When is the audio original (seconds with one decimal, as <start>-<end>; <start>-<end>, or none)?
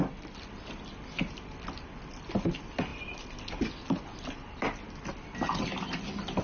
0.0-6.4